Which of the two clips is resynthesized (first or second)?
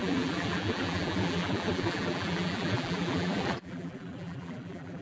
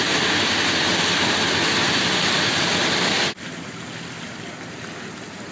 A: first